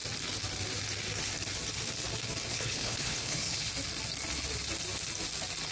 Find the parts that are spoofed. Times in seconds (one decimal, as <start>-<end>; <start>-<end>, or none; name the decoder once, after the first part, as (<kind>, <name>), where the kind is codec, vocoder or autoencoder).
2.5-3.7 (codec, HILCodec)